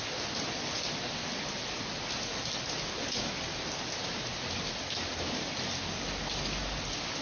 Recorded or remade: recorded